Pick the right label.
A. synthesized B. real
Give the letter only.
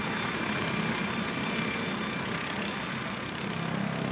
B